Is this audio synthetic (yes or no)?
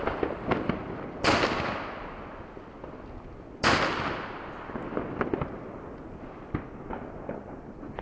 no